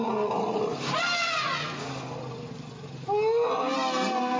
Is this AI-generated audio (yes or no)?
no